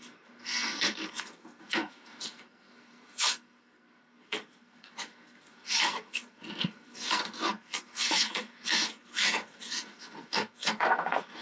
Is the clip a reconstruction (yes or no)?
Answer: yes